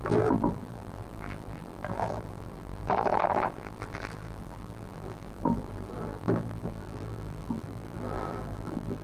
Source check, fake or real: fake